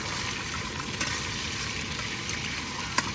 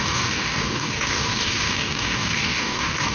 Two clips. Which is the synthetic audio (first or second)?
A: second